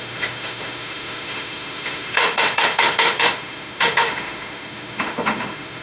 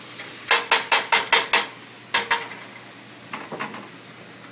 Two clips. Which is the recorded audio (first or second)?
second